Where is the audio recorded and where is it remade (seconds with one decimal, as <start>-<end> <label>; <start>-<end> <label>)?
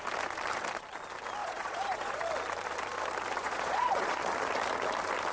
0.0-1.4 recorded; 1.4-2.2 remade; 2.2-3.4 recorded; 3.4-4.2 remade; 4.2-5.3 recorded